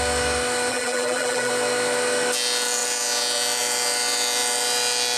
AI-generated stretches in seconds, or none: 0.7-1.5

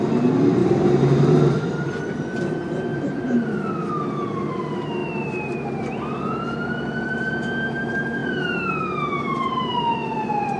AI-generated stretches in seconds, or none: 0.6-1.4; 2.9-3.6; 5.0-5.8; 8.2-8.7

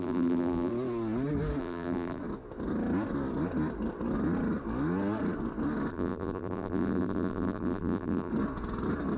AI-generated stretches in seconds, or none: 0.0-0.7; 1.6-2.2; 5.9-8.3

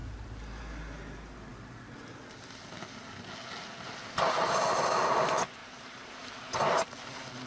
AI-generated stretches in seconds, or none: 5.6-6.4

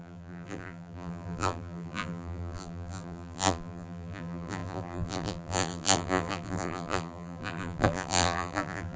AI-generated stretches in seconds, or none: 0.0-9.0